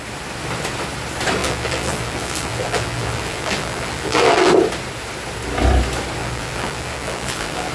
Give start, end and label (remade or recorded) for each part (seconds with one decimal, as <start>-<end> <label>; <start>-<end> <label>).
0.0-1.4 recorded; 1.4-4.5 remade; 4.5-6.2 recorded; 6.2-7.7 remade